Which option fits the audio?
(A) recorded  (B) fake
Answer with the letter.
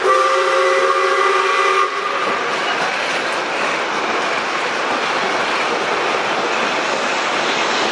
A